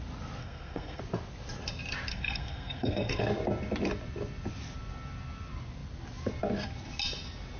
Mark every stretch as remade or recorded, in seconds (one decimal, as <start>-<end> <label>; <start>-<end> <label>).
0.0-0.4 recorded; 0.4-1.0 remade; 1.0-2.1 recorded; 2.1-3.2 remade; 3.2-7.6 recorded